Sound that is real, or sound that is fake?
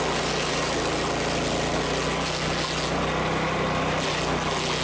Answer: real